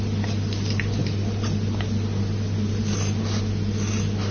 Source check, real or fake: real